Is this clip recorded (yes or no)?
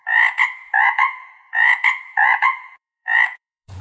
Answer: no